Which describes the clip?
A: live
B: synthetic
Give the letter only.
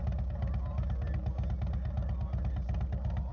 A